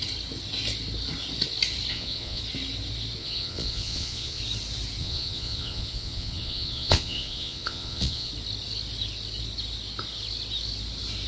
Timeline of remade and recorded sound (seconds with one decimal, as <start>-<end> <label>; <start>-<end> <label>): 0.0-1.9 recorded; 1.9-2.4 remade; 2.4-3.2 recorded; 3.2-4.4 remade; 4.4-5.0 recorded; 5.0-8.3 remade; 8.3-11.3 recorded